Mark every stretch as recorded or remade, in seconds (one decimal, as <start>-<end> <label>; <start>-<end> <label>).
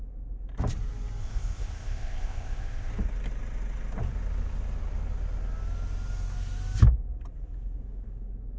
0.0-1.2 recorded; 1.2-2.9 remade; 2.9-8.6 recorded